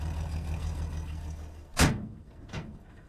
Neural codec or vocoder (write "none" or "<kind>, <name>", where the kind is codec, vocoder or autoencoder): codec, SNAC